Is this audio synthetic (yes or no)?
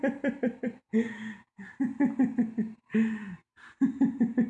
no